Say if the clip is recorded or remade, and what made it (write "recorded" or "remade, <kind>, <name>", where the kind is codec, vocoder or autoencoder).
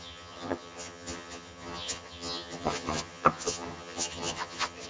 remade, vocoder, HiFi-GAN